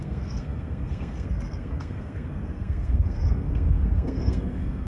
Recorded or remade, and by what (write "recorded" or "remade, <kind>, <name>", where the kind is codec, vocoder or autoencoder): remade, codec, SNAC